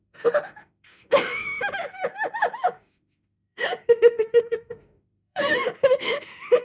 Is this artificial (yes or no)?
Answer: yes